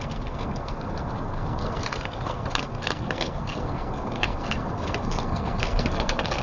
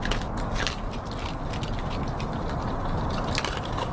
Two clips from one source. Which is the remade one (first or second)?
first